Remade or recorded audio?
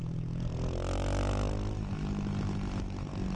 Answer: recorded